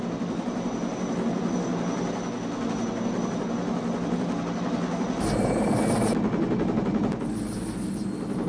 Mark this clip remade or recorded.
recorded